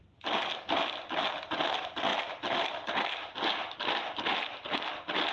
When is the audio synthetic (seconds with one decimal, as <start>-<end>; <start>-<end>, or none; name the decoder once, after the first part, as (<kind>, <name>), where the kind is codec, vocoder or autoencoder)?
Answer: none